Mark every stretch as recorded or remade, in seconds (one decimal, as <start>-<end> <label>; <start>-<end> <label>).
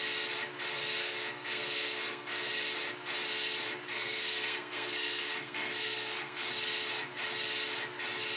0.0-1.0 recorded; 1.0-2.5 remade; 2.5-3.9 recorded; 3.9-6.5 remade; 6.5-8.4 recorded